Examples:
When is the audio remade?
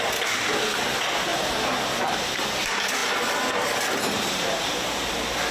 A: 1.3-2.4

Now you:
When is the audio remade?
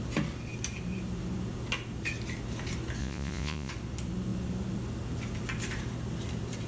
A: 3.0-3.7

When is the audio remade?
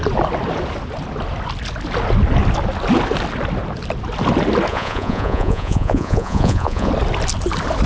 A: 4.7-6.9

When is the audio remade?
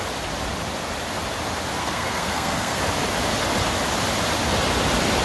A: 1.8-2.8